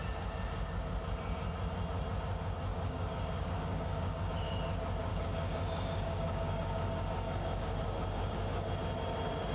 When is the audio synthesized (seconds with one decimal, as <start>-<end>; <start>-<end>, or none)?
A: 2.7-4.3; 5.1-8.7